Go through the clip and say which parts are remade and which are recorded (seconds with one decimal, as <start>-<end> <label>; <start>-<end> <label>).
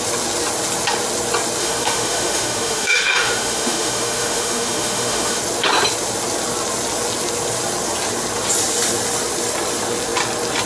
0.0-1.6 recorded; 1.6-5.4 remade; 5.4-10.7 recorded